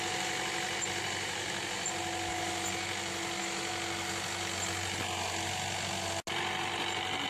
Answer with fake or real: real